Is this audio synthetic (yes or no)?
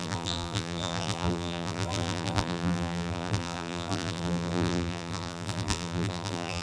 yes